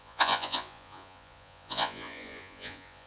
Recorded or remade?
remade